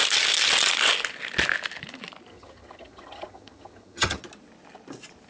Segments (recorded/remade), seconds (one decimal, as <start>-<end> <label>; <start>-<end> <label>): 0.0-2.3 recorded; 2.3-4.2 remade; 4.2-5.3 recorded